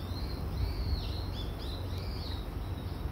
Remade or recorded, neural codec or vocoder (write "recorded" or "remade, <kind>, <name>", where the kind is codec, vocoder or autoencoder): recorded